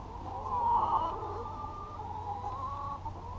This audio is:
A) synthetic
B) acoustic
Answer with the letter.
B